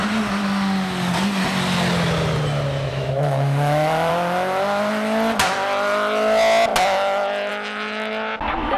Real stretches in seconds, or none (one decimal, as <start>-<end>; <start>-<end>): 0.0-2.9; 4.1-8.8